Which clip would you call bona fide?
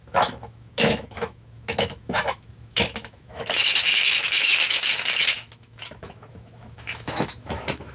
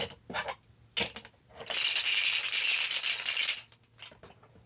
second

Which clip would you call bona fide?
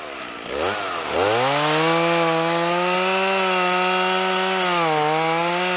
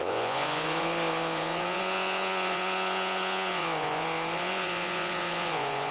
first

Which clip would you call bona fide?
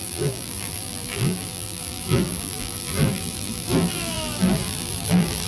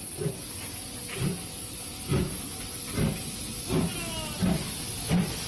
second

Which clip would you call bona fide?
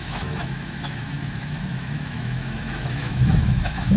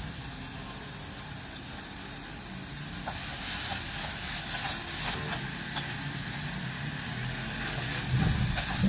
second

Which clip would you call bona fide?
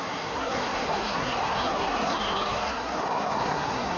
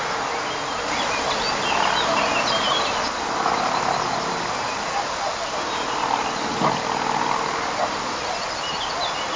second